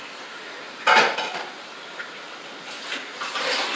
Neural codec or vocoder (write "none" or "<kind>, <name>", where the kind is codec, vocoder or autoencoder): none